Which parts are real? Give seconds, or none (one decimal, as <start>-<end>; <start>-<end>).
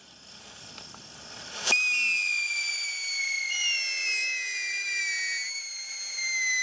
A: 0.0-6.6